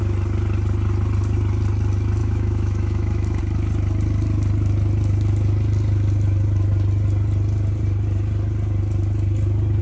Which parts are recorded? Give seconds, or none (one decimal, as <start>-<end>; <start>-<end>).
0.0-2.2; 3.4-9.8